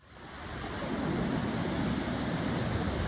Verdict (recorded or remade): recorded